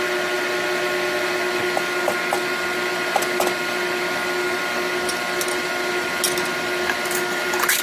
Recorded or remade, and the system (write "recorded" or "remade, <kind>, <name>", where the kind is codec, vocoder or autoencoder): recorded